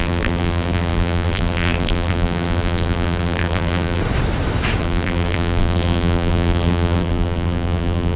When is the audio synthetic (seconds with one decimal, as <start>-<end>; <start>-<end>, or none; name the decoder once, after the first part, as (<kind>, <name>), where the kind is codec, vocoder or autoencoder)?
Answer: 0.0-4.0 (vocoder, BigVGAN v2); 4.8-8.2